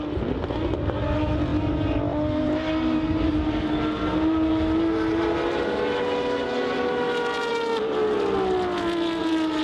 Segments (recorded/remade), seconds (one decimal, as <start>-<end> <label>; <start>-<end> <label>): 0.0-9.6 recorded